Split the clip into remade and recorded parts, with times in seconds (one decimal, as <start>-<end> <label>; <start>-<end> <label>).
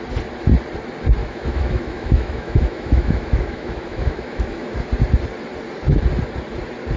0.0-1.2 recorded; 1.2-4.9 remade; 4.9-7.0 recorded